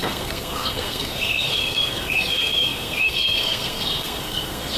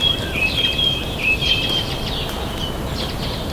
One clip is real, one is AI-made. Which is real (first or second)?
second